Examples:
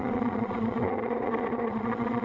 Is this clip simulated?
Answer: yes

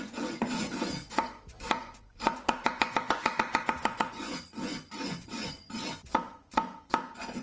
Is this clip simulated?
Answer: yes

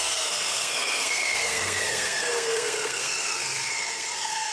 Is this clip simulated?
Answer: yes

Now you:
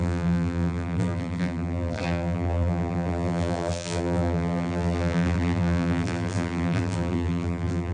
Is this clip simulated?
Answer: yes